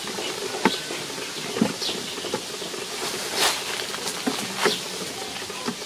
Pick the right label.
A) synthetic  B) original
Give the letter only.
B